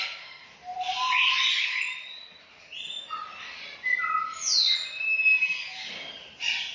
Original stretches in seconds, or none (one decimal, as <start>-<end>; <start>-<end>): 0.0-6.7